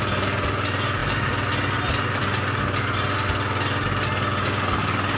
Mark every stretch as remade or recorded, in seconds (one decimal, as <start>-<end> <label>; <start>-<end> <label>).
0.0-5.2 recorded

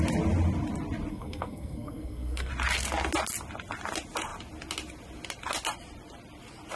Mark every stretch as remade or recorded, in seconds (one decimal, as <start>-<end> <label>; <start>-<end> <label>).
0.0-1.1 recorded; 1.1-2.5 remade; 2.5-6.8 recorded

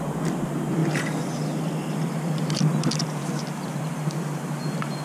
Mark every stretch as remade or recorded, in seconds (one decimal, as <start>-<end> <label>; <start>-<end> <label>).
0.0-5.0 recorded

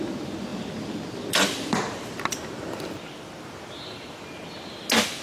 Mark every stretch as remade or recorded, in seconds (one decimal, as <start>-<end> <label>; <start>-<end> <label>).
0.0-5.2 recorded

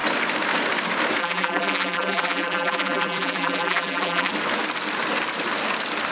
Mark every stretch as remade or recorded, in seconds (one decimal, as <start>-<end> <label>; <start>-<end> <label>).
0.0-1.2 recorded; 1.2-4.3 remade; 4.3-6.1 recorded